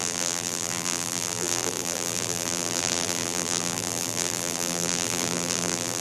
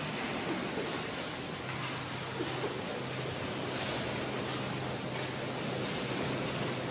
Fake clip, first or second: first